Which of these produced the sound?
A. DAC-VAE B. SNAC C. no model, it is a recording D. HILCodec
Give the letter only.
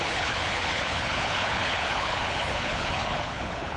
D